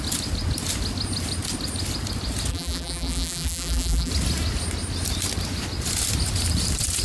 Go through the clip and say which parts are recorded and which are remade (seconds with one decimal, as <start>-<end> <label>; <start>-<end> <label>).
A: 0.0-2.5 recorded; 2.5-4.1 remade; 4.1-7.0 recorded